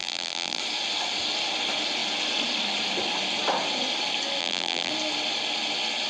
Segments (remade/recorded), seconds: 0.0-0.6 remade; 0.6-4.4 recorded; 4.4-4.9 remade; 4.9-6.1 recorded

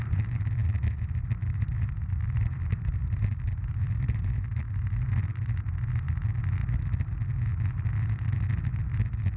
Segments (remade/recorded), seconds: 0.0-4.8 remade; 4.8-9.4 recorded

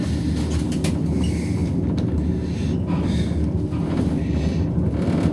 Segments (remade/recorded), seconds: 0.0-5.3 recorded

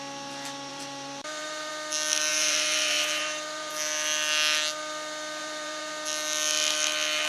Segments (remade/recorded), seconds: 0.0-0.7 recorded; 0.7-1.7 remade; 1.7-2.3 recorded; 2.3-3.7 remade; 3.7-5.4 recorded; 5.4-5.9 remade; 5.9-7.3 recorded